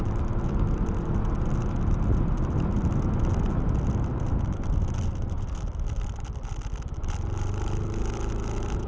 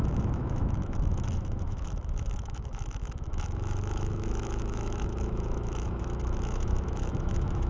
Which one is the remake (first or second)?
second